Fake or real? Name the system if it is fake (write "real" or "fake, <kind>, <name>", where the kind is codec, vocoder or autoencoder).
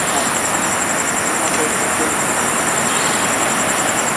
real